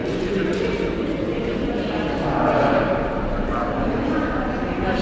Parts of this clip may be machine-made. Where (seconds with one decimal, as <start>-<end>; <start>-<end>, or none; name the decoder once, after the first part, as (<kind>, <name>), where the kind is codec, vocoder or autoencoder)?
0.0-0.6 (vocoder, Vocos)